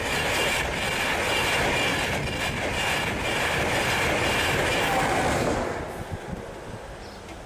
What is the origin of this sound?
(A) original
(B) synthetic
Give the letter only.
A